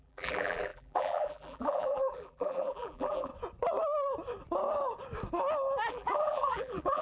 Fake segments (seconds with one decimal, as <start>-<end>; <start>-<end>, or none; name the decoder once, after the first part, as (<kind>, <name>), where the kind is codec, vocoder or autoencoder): 0.0-3.3 (vocoder, BigVGAN v2); 5.9-7.0